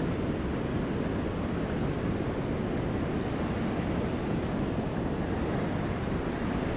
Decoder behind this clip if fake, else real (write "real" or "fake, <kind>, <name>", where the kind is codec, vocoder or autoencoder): real